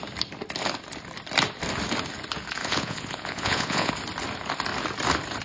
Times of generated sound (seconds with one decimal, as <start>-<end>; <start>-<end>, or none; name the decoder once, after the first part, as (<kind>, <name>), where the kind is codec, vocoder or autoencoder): 2.6-3.9 (vocoder, Vocos)